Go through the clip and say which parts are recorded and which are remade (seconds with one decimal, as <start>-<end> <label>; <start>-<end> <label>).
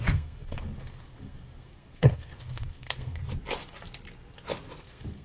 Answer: 0.0-3.2 remade; 3.2-4.8 recorded; 4.8-5.2 remade